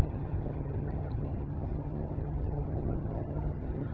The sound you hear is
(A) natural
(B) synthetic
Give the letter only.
B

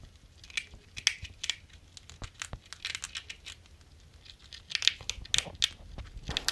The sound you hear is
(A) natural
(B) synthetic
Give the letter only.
A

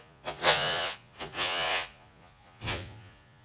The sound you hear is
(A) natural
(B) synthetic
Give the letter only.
B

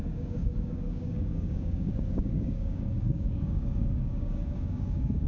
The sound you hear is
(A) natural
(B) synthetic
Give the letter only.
B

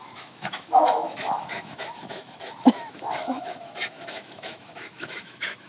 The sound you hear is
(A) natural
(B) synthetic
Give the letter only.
B